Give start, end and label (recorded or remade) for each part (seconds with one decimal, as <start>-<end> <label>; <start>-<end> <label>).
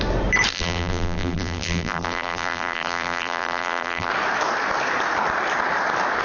0.0-0.5 recorded; 0.5-4.1 remade; 4.1-6.2 recorded